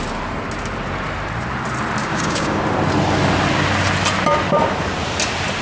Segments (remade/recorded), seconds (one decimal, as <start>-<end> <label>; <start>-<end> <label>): 0.0-2.0 recorded; 2.0-2.6 remade; 2.6-5.6 recorded